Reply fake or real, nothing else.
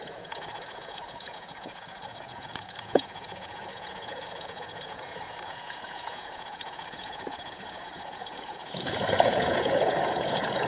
fake